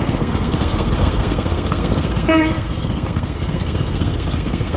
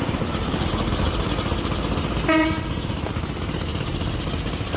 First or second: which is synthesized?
first